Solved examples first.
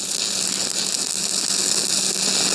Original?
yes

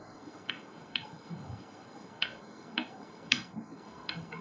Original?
no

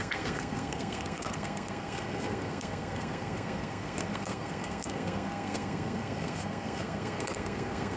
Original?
no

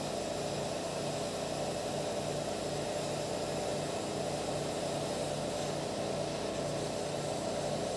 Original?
yes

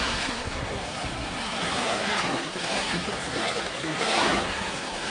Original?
no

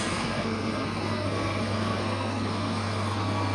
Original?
no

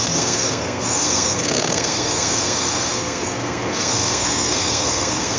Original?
no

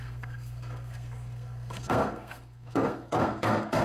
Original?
no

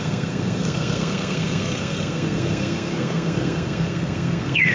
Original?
no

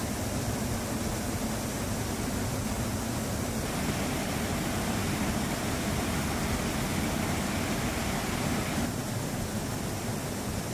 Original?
yes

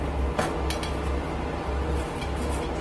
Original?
yes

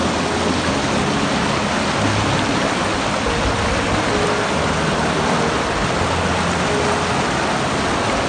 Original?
yes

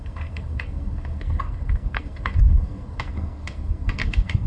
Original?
no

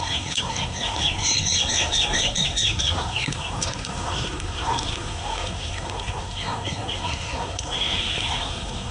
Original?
no